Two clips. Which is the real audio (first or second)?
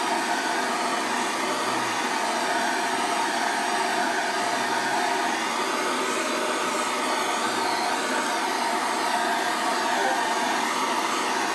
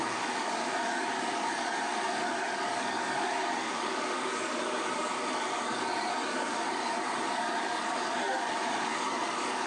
first